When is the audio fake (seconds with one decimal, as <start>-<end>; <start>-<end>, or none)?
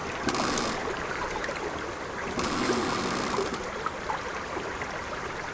none